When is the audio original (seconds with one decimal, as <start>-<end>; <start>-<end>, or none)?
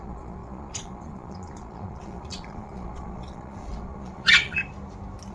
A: 4.6-5.3